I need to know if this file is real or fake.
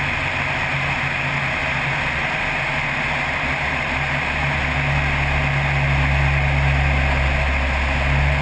real